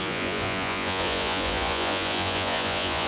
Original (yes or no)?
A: no